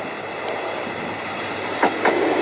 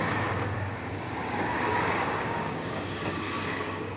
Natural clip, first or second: first